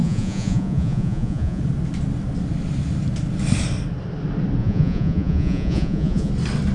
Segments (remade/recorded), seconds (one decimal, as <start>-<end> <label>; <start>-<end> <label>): 0.0-1.6 remade; 1.6-4.6 recorded; 4.6-6.3 remade; 6.3-6.7 recorded